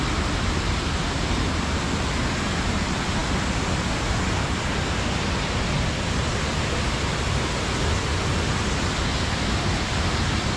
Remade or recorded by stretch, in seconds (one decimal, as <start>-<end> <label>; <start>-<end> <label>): 0.0-10.6 recorded

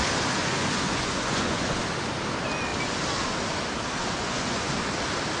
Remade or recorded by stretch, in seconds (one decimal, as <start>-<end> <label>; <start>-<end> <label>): 0.0-0.4 recorded; 0.4-1.8 remade; 1.8-4.0 recorded; 4.0-4.7 remade; 4.7-5.4 recorded

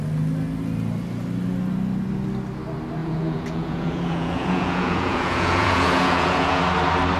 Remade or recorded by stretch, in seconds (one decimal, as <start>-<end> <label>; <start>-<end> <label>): 0.0-3.0 recorded; 3.0-6.6 remade; 6.6-7.2 recorded

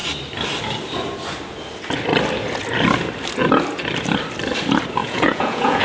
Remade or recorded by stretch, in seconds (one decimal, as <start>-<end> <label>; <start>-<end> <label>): 0.0-5.0 recorded; 5.0-5.8 remade